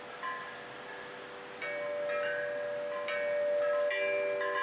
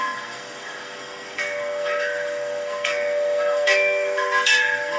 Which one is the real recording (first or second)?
first